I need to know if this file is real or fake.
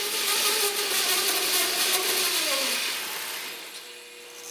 real